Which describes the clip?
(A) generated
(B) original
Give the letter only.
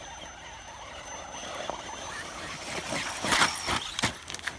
B